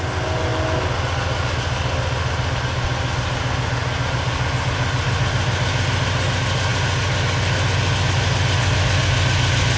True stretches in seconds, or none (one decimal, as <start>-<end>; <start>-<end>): 0.0-9.8